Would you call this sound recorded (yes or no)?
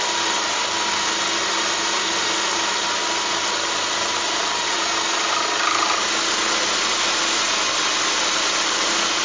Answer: yes